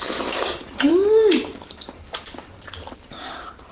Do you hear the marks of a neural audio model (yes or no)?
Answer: yes